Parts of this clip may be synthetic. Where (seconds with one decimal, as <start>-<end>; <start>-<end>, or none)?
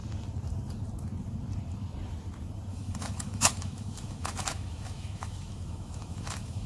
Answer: 2.7-6.7